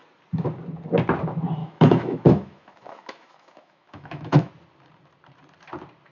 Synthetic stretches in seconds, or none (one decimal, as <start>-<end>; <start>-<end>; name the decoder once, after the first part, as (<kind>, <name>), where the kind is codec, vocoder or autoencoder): 1.6-4.5 (autoencoder, DAC-VAE)